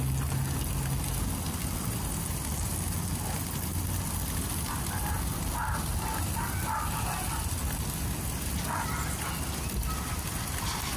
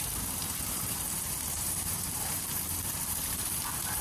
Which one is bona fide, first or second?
first